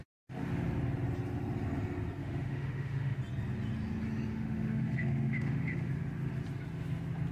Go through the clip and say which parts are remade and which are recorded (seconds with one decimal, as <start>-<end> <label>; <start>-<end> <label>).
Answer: 0.0-2.2 recorded; 2.2-3.2 remade; 3.2-4.3 recorded; 4.3-5.9 remade; 5.9-7.3 recorded